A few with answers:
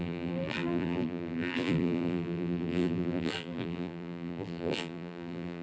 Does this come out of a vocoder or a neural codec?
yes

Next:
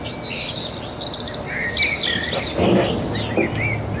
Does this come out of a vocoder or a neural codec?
no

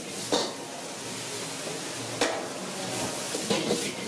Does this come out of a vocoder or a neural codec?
no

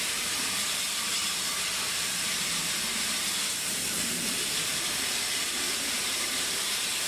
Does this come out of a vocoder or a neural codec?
yes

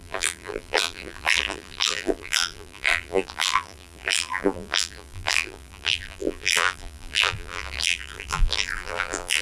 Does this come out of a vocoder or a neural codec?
yes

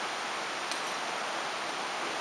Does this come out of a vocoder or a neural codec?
yes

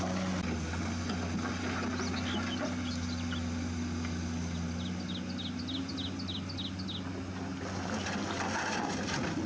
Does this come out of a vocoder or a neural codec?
no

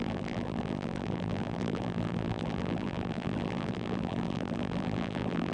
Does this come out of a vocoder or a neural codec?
yes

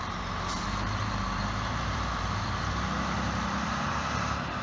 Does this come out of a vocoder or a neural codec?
yes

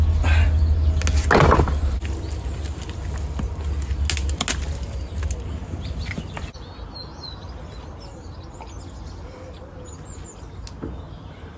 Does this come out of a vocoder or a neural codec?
no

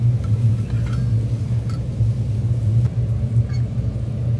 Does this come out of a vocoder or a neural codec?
no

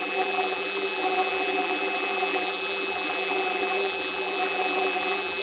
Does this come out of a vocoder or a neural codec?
yes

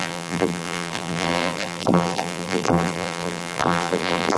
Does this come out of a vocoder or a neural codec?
yes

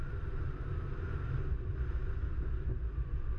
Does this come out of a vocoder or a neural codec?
no